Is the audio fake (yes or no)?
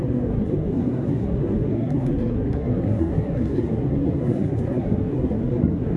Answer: yes